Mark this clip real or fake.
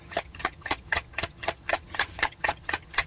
fake